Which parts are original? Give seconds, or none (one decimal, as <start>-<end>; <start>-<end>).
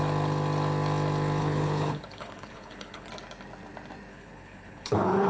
0.0-1.4; 3.1-4.1